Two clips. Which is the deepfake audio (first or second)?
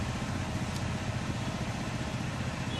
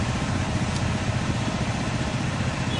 second